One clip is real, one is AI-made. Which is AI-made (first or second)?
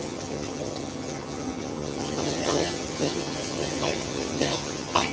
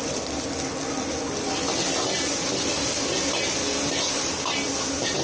first